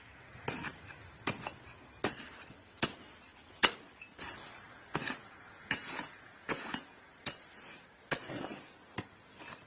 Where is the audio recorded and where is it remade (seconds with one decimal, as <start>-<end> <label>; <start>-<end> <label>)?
0.0-5.2 recorded; 5.2-7.1 remade; 7.1-9.7 recorded